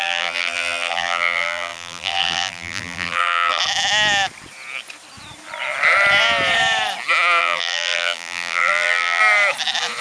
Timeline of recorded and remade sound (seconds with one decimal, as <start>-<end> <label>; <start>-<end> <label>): 0.0-3.6 remade; 3.6-7.4 recorded; 7.4-9.2 remade; 9.2-10.0 recorded